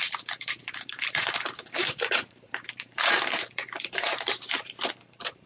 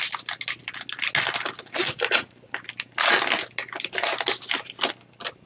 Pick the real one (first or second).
second